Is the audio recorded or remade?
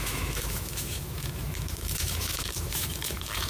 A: remade